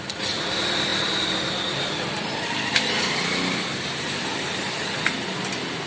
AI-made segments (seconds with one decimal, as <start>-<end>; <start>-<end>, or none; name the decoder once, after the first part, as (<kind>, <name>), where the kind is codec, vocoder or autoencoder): none

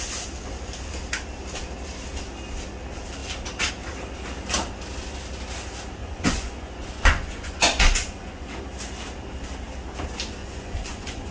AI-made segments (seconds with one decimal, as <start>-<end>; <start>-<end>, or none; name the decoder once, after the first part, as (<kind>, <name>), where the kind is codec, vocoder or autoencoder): 6.0-8.5 (vocoder, Vocos); 10.4-11.3

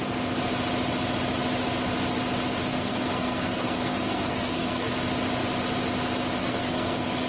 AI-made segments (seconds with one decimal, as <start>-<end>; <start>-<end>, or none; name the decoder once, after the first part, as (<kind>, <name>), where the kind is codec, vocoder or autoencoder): 2.7-4.9 (codec, SNAC); 6.4-7.3

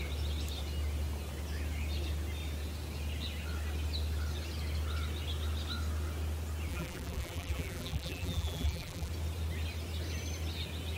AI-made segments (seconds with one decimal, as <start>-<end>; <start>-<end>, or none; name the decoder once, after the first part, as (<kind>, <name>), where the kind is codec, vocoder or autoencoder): 6.7-9.1 (vocoder, BigVGAN v2)

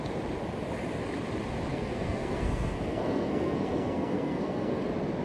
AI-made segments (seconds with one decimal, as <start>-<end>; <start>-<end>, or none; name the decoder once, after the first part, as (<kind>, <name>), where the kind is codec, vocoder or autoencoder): 1.7-4.8 (codec, SNAC)

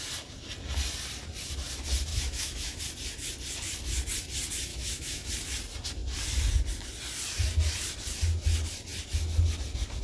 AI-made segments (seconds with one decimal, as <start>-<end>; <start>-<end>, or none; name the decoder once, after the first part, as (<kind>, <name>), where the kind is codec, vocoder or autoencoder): 2.1-2.8 (autoencoder, DAC-VAE); 4.7-5.3

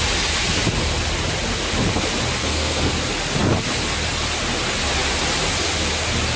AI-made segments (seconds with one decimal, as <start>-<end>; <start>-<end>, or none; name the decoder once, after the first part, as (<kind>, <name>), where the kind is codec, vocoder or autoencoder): 2.4-2.9 (codec, SNAC)